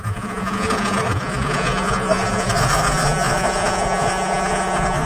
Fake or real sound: fake